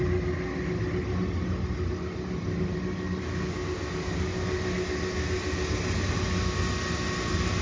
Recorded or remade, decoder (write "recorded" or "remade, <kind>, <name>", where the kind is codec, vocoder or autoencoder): recorded